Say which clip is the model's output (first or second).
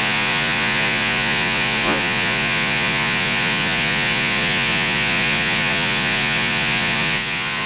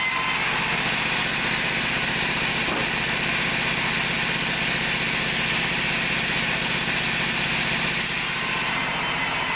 first